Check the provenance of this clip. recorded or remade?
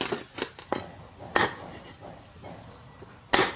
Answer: recorded